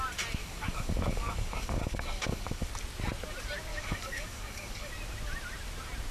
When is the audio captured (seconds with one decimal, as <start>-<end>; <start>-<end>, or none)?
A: 0.0-0.4; 2.7-3.7; 4.9-6.1